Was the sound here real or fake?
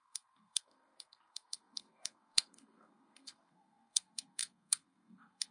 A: fake